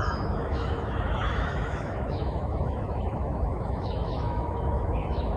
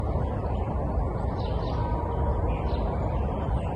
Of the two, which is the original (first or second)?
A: second